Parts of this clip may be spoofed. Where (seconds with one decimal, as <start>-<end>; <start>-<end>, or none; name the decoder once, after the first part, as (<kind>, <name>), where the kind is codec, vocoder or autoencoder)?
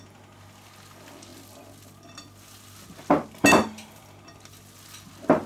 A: none